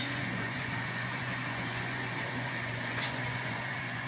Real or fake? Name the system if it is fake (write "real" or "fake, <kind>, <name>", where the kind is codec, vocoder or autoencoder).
fake, vocoder, Vocos